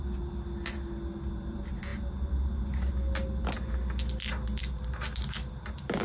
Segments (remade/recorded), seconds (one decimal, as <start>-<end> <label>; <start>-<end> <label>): 0.0-6.0 recorded